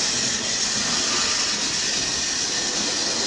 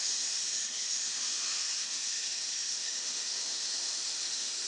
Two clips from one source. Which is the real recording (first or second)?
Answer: first